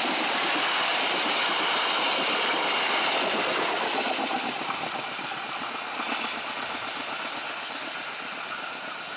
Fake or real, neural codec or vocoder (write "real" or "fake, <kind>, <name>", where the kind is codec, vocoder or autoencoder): real